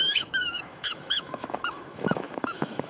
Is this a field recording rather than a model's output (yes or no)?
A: no